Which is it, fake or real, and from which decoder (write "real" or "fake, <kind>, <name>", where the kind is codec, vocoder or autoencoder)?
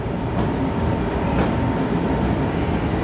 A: fake, vocoder, BigVGAN v2